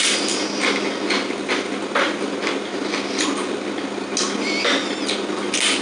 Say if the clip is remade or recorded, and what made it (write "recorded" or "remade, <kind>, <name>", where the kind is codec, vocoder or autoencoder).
recorded